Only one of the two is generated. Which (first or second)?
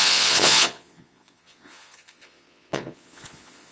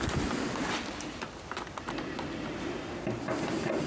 first